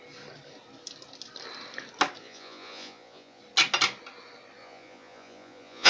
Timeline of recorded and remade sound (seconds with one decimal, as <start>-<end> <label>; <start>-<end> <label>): 0.0-2.2 recorded; 2.2-3.4 remade; 3.4-4.6 recorded; 4.6-5.9 remade